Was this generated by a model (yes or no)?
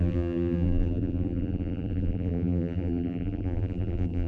yes